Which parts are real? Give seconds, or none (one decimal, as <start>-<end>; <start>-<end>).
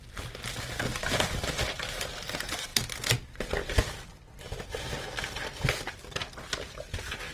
0.0-7.3